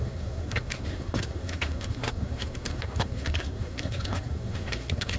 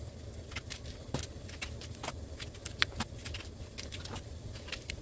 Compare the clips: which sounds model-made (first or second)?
first